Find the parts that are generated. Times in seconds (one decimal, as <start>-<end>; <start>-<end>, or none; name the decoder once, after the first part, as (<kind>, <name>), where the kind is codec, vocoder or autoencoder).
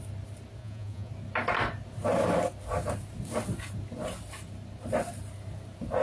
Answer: 0.6-1.1 (vocoder, Vocos)